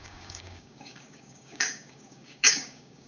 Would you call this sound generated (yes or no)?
yes